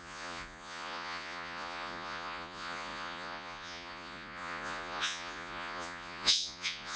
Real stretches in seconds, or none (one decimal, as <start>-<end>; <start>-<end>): none